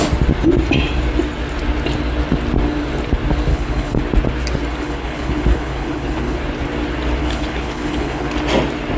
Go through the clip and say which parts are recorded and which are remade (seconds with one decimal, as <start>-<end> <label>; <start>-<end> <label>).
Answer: 0.0-3.5 recorded; 3.5-4.0 remade; 4.0-4.7 recorded; 4.7-6.4 remade; 6.4-7.2 recorded; 7.2-8.3 remade; 8.3-9.0 recorded